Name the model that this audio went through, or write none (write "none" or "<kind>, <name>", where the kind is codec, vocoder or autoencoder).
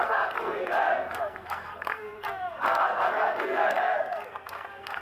codec, SNAC